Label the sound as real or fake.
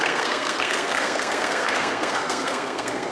fake